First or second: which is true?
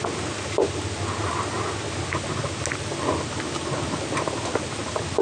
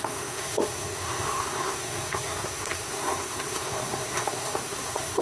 first